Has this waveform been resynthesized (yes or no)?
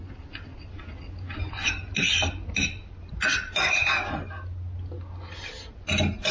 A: no